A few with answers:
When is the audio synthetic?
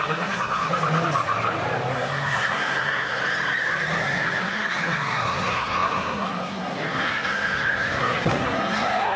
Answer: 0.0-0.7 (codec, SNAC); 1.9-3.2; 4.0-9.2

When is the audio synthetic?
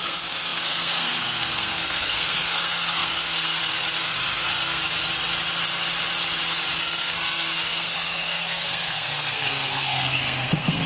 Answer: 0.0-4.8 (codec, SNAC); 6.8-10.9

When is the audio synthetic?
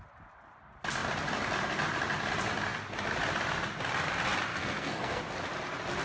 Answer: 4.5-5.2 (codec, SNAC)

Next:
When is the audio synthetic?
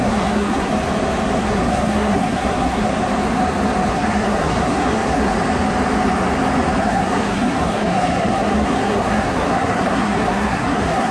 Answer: 0.0-0.7 (codec, SNAC); 1.4-2.9; 3.9-5.3; 6.8-11.1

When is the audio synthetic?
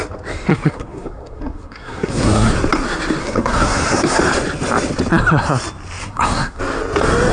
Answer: 0.5-2.5 (codec, SNAC); 3.2-4.2; 6.0-6.6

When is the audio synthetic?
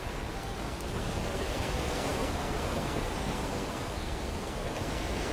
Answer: 0.0-5.3 (codec, SNAC)